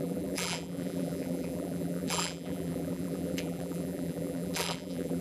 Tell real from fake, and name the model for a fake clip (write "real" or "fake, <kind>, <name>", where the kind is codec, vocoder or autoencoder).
fake, vocoder, BigVGAN v2